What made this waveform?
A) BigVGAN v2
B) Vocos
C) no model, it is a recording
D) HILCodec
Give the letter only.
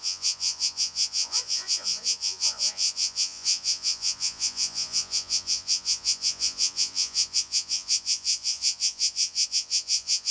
B